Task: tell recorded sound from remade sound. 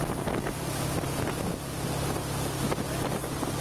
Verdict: recorded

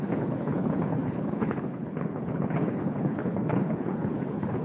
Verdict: remade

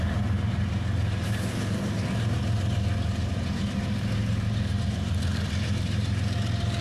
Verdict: remade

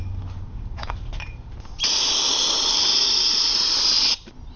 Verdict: recorded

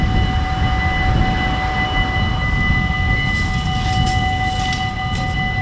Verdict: recorded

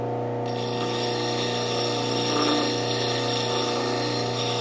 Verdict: recorded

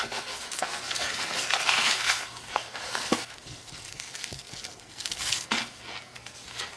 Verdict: remade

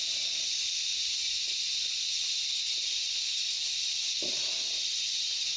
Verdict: recorded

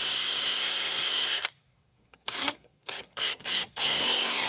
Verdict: remade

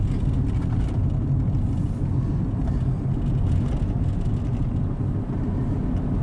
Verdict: recorded